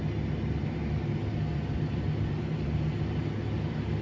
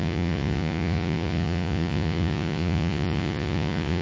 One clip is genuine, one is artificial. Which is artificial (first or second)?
second